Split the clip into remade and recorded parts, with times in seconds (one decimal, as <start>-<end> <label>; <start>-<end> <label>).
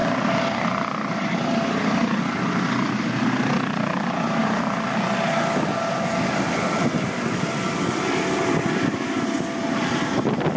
0.0-10.6 recorded